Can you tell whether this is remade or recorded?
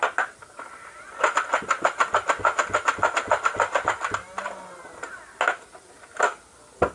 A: recorded